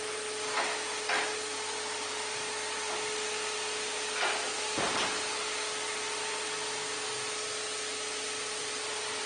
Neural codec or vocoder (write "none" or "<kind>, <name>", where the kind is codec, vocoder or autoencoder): none